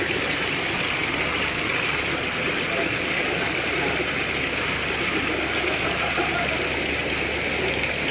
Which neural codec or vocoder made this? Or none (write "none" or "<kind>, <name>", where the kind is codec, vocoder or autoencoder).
none